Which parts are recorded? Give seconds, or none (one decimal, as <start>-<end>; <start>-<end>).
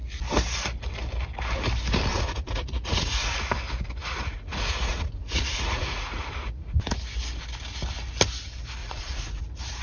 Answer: 0.0-2.1; 3.5-4.0; 6.8-8.8; 9.4-9.8